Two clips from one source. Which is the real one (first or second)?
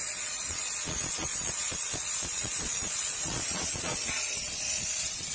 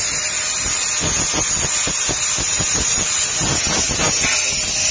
second